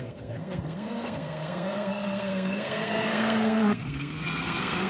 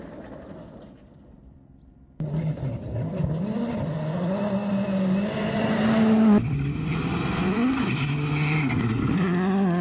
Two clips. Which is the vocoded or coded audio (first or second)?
first